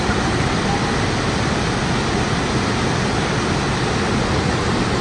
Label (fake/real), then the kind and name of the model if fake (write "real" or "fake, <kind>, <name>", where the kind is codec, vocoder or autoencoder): real